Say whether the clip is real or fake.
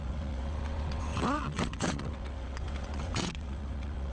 fake